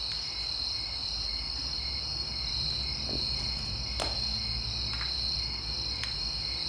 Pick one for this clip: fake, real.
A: real